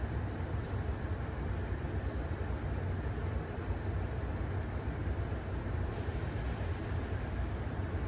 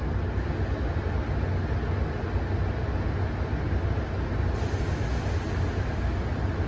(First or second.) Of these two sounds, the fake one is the first